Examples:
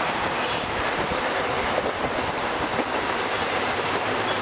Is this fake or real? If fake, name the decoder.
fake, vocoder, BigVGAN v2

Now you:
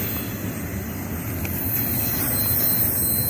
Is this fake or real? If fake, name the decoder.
real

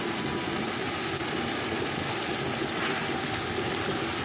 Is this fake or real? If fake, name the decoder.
real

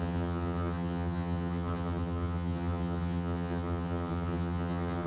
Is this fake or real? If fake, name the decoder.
fake, vocoder, HiFi-GAN